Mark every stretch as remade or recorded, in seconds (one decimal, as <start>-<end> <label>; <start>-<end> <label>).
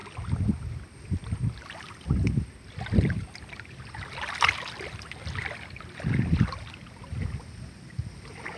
0.0-8.6 recorded